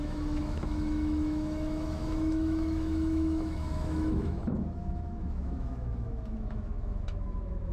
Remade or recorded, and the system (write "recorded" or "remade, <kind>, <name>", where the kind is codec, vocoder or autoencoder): remade, autoencoder, DAC-VAE